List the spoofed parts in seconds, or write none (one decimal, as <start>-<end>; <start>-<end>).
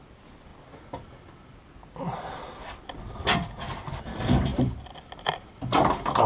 none